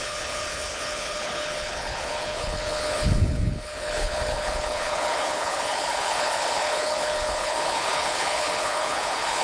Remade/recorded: remade